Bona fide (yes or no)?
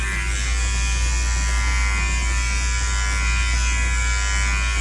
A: yes